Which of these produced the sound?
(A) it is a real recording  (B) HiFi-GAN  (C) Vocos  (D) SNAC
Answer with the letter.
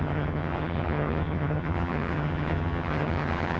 B